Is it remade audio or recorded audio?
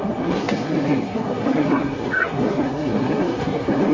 remade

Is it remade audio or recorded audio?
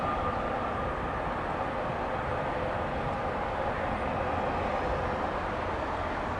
recorded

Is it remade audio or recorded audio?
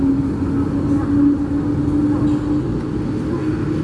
recorded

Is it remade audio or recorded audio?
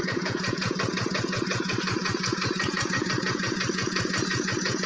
remade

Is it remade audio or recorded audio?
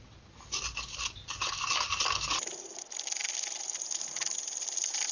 recorded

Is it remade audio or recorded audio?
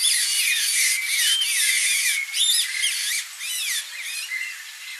recorded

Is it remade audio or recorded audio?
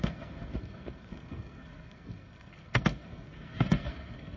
remade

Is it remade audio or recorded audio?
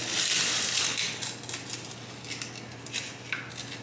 recorded